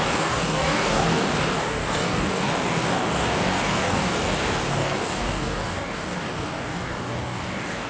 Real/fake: fake